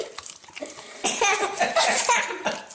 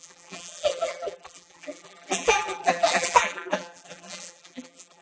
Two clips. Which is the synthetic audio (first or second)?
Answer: second